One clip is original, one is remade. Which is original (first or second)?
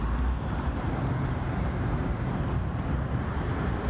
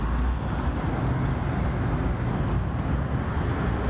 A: second